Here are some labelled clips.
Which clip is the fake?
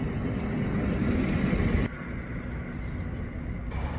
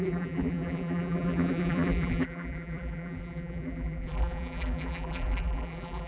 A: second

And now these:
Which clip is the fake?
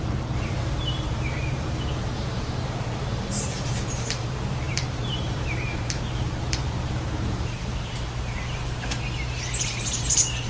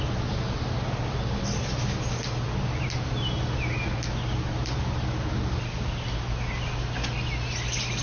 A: first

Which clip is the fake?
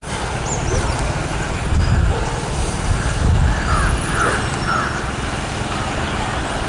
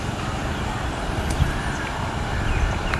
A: second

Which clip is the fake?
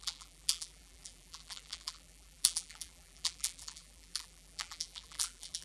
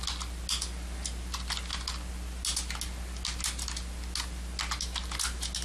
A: first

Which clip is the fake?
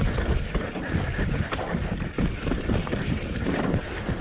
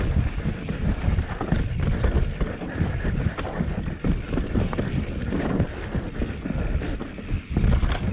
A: first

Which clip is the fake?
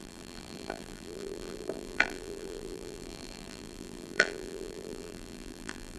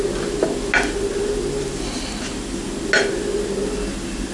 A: first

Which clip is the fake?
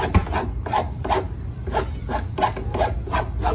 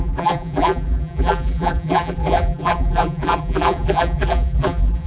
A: second